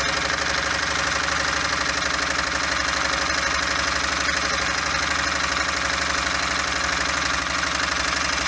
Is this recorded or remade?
recorded